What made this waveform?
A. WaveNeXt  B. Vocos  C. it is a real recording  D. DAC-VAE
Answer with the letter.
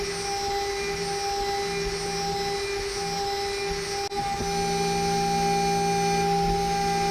C